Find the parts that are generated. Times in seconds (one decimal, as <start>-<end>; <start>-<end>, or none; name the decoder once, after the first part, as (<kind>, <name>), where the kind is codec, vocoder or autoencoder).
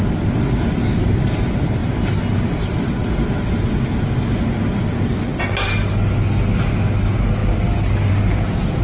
none